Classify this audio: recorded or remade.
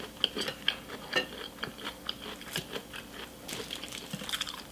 recorded